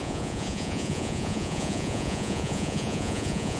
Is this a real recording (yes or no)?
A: no